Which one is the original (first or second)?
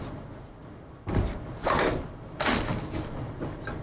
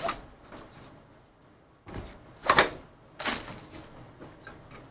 second